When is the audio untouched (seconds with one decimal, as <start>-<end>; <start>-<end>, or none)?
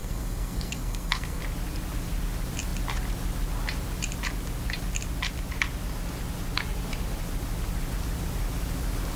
1.4-9.2